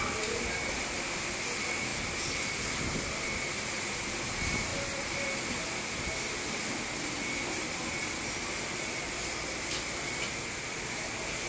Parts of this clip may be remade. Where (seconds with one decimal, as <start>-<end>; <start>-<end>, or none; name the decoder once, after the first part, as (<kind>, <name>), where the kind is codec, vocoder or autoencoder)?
none